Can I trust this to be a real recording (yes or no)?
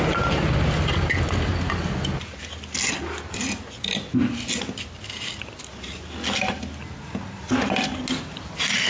yes